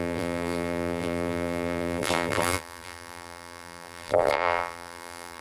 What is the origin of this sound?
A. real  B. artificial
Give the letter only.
B